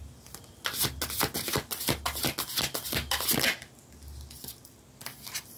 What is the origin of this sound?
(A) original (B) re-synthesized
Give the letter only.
A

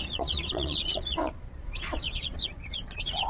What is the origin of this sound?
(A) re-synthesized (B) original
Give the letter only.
A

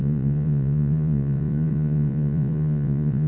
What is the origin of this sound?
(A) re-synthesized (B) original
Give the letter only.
A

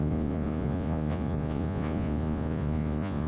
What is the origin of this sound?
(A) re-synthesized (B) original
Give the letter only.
A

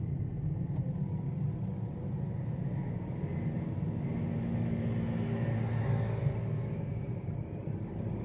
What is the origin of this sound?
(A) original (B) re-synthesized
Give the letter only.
A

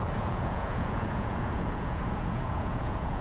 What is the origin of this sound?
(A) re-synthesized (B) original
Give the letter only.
A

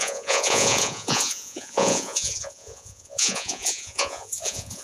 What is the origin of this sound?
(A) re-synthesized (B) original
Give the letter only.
A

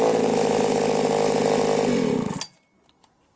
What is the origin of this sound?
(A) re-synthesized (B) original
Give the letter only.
B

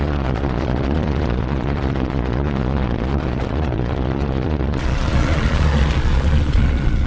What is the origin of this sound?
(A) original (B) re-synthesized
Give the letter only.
B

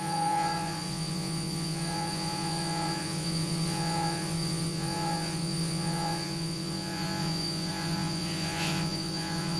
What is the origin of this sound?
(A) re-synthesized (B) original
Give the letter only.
A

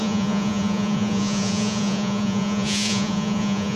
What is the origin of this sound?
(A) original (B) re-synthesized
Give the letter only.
B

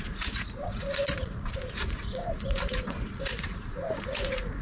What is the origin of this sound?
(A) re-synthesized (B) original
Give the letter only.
A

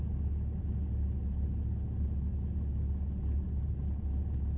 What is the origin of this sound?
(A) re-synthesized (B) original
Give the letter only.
B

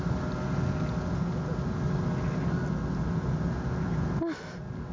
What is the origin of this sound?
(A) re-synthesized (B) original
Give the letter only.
B